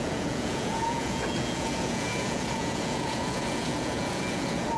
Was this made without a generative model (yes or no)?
no